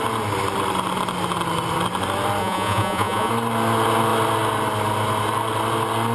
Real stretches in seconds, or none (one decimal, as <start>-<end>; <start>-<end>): 0.0-2.4; 3.3-6.1